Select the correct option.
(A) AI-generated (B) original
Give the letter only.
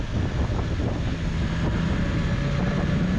B